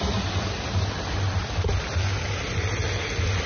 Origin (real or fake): real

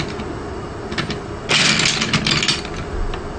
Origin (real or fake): real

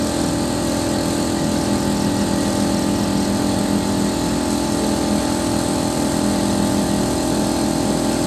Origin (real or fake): real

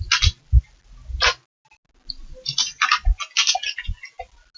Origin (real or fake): real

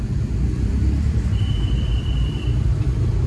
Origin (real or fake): real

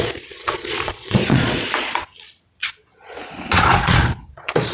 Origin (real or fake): fake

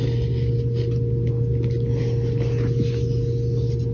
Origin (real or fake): real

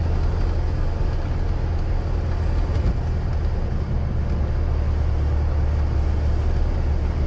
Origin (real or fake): real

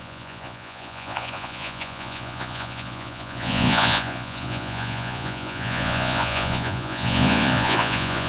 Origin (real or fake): fake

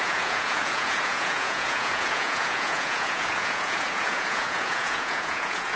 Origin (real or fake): fake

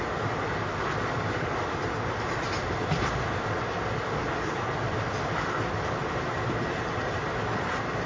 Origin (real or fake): real